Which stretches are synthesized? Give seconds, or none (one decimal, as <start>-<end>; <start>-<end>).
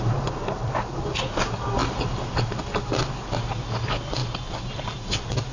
none